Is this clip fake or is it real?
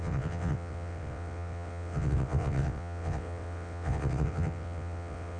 fake